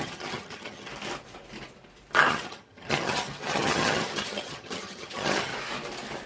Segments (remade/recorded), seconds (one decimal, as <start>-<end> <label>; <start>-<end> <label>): 0.0-0.9 remade; 0.9-2.3 recorded; 2.3-5.5 remade; 5.5-6.3 recorded